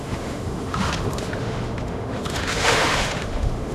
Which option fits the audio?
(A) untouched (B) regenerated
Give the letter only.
B